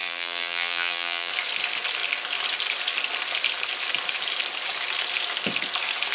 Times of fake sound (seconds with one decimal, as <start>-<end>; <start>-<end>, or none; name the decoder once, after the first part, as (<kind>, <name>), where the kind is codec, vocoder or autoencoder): 0.0-1.3 (vocoder, BigVGAN v2)